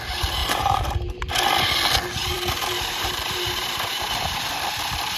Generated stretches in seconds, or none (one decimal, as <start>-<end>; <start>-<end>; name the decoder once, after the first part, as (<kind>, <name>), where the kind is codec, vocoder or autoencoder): 0.4-1.2 (vocoder, BigVGAN v2); 2.2-4.5